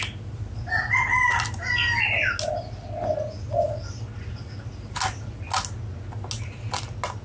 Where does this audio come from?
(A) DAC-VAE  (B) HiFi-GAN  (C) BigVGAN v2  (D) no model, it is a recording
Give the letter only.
D